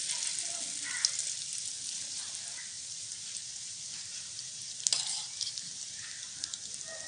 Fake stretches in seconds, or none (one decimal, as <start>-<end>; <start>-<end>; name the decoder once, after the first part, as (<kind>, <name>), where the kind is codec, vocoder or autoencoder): 1.5-2.3 (vocoder, BigVGAN v2); 2.7-6.1